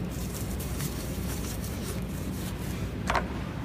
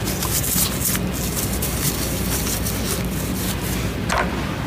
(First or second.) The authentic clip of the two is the second